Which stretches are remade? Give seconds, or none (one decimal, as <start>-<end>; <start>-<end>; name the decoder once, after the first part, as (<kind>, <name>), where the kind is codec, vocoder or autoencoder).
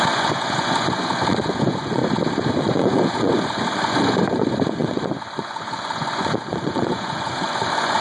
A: 0.0-2.0 (vocoder, Vocos); 2.5-8.0